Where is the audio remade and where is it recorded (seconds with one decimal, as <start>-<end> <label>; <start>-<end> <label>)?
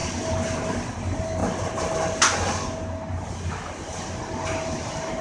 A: 0.0-1.4 remade; 1.4-3.5 recorded; 3.5-5.2 remade